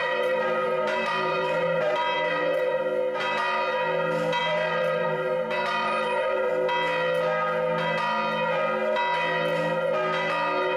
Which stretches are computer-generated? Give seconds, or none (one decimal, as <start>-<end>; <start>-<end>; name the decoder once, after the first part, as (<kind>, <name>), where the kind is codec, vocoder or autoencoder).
0.0-2.8 (vocoder, BigVGAN v2); 4.4-6.5

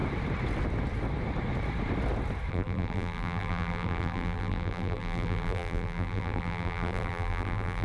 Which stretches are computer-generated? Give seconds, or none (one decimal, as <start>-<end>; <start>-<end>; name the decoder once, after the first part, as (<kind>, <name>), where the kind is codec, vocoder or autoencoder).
2.5-7.8 (vocoder, BigVGAN v2)

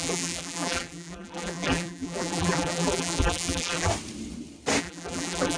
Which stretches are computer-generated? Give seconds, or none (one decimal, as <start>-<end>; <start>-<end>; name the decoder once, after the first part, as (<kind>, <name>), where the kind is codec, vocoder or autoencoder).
0.0-3.9 (vocoder, BigVGAN v2); 4.8-5.6

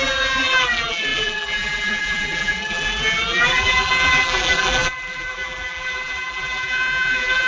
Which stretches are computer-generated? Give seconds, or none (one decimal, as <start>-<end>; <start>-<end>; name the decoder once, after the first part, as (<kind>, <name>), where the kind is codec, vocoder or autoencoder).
0.0-7.5 (vocoder, BigVGAN v2)